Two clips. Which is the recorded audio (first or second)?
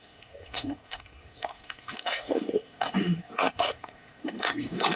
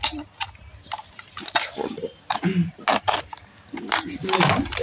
second